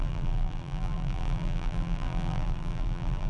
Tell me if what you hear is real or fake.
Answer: fake